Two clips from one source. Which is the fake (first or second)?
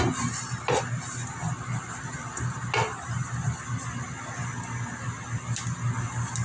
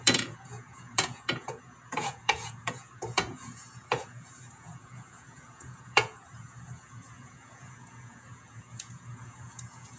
second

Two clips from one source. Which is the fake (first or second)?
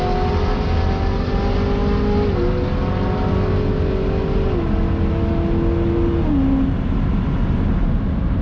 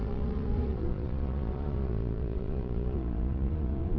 second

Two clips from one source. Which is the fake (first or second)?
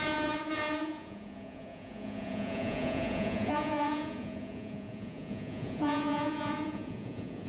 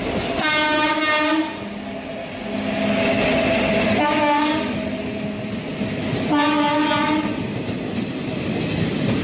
first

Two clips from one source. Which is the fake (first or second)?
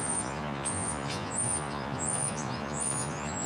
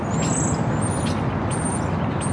first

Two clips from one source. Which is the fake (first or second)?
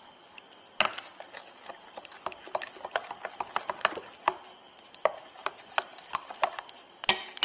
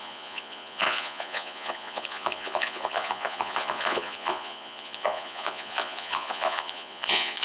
second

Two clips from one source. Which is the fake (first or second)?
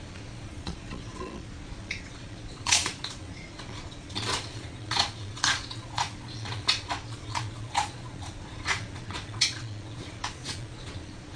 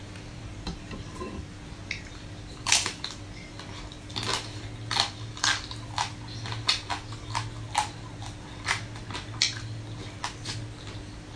first